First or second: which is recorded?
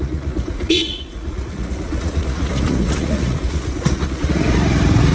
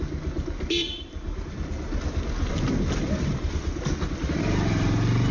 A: second